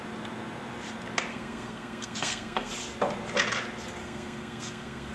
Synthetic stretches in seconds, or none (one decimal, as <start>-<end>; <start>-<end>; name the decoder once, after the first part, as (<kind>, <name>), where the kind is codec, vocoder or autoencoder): 1.3-2.7 (codec, SNAC); 4.0-5.1